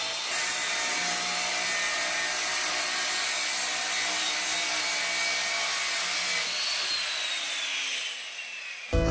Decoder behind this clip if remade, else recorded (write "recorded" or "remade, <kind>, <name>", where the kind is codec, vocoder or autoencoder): recorded